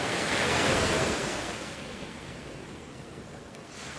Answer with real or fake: fake